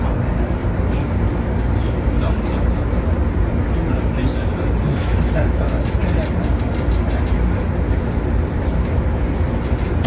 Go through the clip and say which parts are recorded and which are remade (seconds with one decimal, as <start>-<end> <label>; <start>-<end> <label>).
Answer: 0.0-10.1 recorded